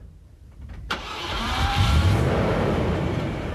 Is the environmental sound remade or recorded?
remade